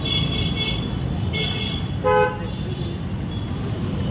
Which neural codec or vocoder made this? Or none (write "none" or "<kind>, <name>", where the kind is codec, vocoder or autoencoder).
none